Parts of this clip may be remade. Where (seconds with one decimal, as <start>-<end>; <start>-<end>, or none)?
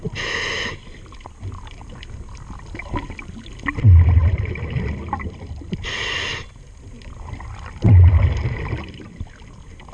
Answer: none